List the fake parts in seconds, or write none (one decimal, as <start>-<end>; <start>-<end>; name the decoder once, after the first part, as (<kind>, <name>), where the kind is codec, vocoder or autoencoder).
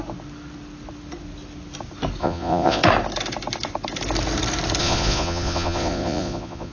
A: 2.2-2.8 (vocoder, Vocos); 4.8-6.7